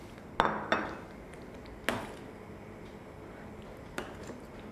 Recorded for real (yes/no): yes